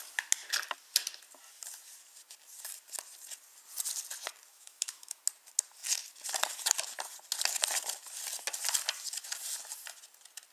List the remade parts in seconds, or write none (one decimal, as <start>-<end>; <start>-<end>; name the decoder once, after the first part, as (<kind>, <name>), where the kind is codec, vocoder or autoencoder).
4.5-5.2 (autoencoder, DAC-VAE)